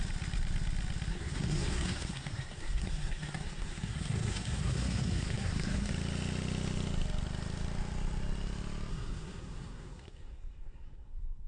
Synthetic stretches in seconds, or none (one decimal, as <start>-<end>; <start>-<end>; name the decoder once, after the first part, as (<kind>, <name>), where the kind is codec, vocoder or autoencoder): 1.1-5.9 (codec, SNAC); 8.9-11.5